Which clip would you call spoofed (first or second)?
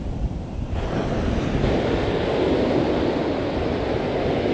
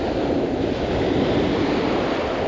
second